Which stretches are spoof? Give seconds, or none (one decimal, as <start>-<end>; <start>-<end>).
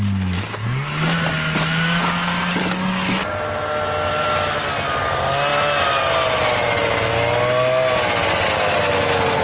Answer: none